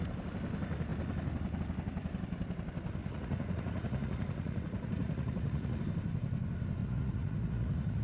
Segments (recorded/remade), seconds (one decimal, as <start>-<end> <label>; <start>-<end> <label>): 0.0-3.0 recorded; 3.0-5.8 remade; 5.8-6.8 recorded; 6.8-8.0 remade